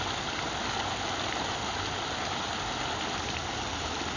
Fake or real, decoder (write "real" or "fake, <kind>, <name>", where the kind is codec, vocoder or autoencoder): real